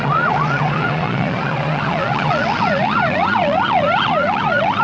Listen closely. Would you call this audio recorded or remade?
remade